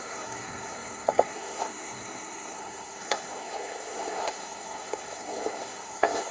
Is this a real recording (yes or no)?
no